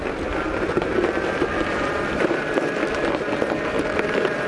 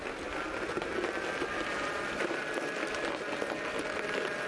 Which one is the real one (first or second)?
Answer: second